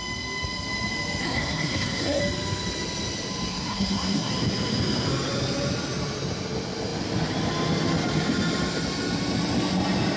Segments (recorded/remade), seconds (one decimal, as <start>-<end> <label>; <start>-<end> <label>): 0.0-1.2 recorded; 1.2-2.2 remade; 2.2-3.5 recorded; 3.5-4.3 remade; 4.3-10.2 recorded

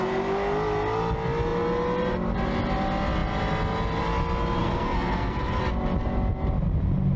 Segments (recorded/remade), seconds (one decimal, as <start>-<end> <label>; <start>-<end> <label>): 0.0-4.6 recorded; 4.6-5.6 remade; 5.6-7.2 recorded

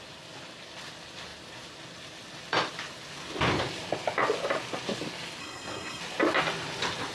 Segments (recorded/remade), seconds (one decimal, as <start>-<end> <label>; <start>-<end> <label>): 0.0-5.4 recorded; 5.4-6.0 remade; 6.0-7.1 recorded